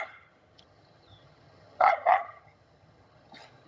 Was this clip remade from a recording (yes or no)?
yes